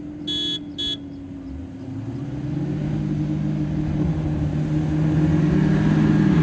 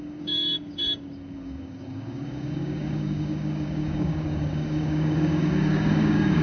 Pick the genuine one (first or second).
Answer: first